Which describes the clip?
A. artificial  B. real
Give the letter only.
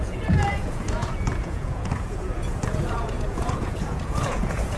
A